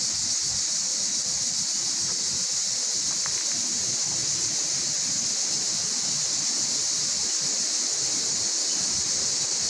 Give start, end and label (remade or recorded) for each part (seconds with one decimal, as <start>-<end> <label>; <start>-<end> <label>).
0.0-9.7 recorded